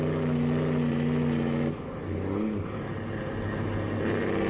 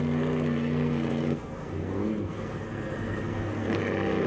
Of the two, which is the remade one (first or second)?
second